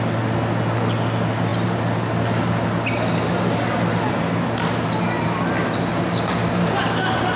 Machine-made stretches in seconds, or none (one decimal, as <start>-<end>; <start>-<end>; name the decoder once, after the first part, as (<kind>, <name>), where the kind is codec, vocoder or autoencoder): none